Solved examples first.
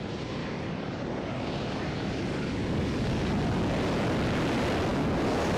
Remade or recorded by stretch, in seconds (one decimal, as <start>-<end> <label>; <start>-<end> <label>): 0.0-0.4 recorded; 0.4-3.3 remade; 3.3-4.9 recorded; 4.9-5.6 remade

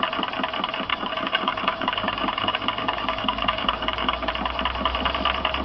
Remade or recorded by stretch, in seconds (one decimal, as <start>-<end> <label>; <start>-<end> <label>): 0.0-0.9 recorded; 0.9-4.3 remade; 4.3-5.6 recorded

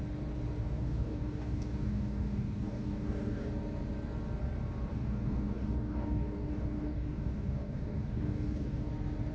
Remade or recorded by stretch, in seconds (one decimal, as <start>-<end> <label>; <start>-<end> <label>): 0.0-0.6 recorded; 0.6-3.5 remade; 3.5-4.9 recorded; 4.9-8.9 remade; 8.9-9.3 recorded

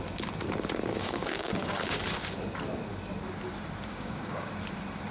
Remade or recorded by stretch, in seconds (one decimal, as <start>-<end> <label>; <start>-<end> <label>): 0.0-0.9 recorded; 0.9-2.0 remade; 2.0-3.9 recorded; 3.9-4.5 remade; 4.5-5.1 recorded